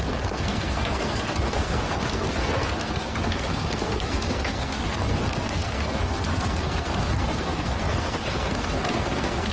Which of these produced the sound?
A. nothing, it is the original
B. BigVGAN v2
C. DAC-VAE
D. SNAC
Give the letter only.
D